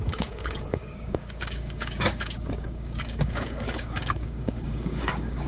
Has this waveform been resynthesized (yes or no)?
yes